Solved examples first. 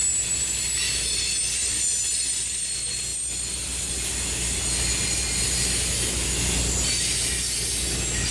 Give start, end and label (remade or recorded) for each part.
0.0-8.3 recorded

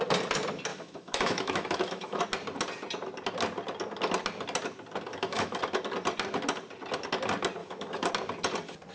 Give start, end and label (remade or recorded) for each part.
0.0-0.7 recorded; 0.7-2.2 remade; 2.2-5.1 recorded; 5.1-5.6 remade; 5.6-7.6 recorded; 7.6-8.1 remade; 8.1-8.9 recorded

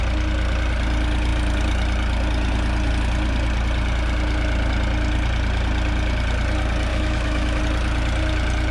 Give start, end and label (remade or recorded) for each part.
0.0-6.9 recorded; 6.9-7.6 remade; 7.6-8.7 recorded